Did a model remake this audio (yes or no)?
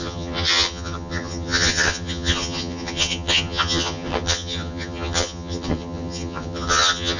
yes